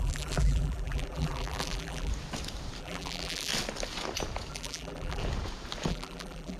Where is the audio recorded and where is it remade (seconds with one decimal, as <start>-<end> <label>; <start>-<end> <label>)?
0.0-2.1 remade; 2.1-2.8 recorded; 2.8-3.5 remade; 3.5-4.5 recorded; 4.5-5.2 remade; 5.2-5.9 recorded; 5.9-6.6 remade